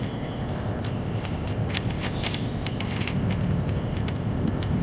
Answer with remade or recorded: remade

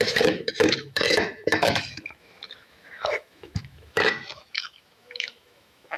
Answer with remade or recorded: remade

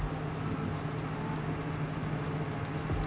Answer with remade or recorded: recorded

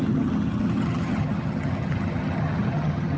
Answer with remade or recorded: remade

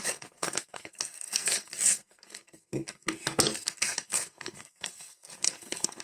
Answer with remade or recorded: remade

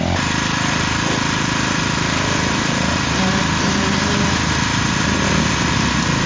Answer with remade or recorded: recorded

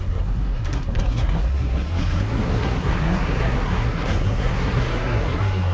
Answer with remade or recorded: remade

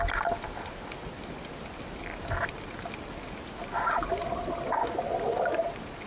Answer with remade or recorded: recorded